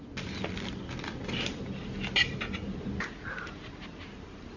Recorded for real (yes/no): yes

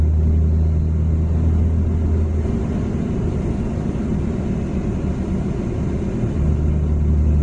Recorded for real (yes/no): yes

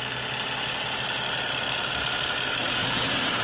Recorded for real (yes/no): yes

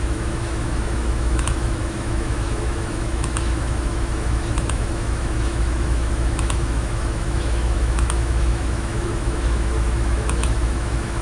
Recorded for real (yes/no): no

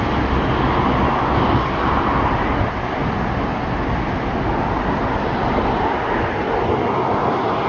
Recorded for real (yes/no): yes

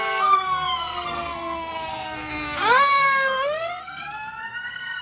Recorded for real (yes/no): no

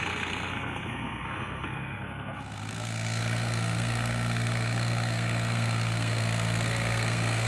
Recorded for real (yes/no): no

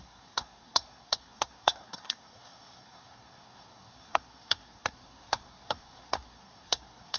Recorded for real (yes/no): no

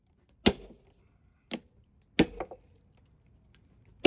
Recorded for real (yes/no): yes